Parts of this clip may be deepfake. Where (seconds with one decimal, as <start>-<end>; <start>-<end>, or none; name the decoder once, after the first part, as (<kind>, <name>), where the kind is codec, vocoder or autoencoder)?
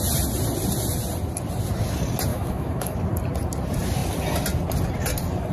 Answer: 2.3-3.0 (autoencoder, DAC-VAE)